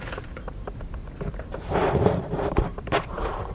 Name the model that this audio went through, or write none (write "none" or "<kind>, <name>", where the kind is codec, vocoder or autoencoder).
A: vocoder, BigVGAN v2